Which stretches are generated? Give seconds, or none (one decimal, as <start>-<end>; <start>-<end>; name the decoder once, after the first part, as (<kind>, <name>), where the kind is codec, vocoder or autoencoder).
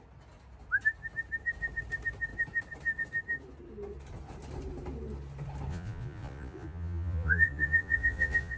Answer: 5.7-8.6 (vocoder, Vocos)